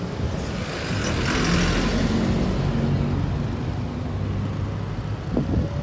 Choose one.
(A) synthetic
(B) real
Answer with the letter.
B